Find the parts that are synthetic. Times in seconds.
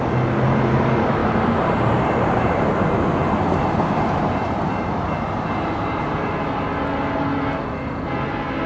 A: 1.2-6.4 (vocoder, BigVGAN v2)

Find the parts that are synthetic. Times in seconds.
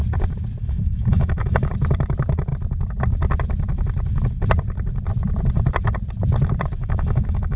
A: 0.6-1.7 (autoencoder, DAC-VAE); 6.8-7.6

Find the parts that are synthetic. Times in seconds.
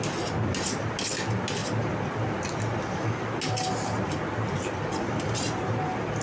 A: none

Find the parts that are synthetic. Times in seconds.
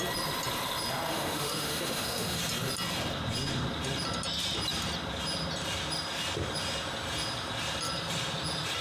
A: 1.1-2.4 (autoencoder, DAC-VAE)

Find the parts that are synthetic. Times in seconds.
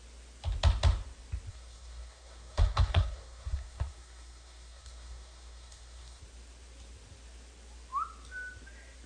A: 1.5-6.2 (codec, SNAC)